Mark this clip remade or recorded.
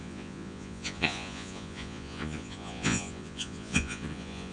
remade